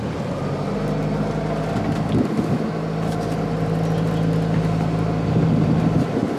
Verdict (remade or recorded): recorded